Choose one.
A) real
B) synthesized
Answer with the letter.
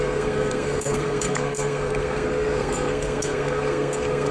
B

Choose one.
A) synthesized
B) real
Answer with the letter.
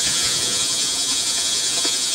A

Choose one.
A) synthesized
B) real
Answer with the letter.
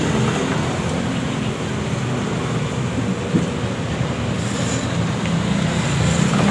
B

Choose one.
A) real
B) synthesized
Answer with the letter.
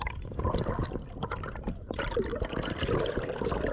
A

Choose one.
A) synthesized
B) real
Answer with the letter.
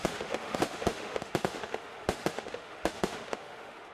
A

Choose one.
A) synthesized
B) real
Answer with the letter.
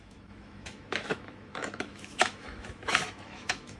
A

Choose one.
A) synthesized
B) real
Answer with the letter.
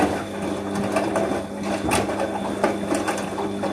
B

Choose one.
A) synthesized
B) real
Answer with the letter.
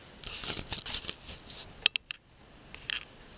B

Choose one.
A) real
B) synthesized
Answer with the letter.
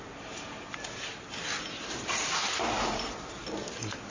A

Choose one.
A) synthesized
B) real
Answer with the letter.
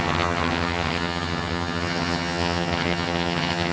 A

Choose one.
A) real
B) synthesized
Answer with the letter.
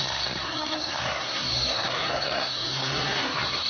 B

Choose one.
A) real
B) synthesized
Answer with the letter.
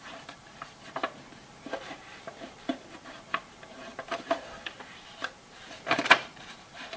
B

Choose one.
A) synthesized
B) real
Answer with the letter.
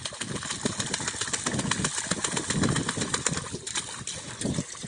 B